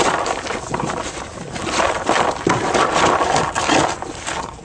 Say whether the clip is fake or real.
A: real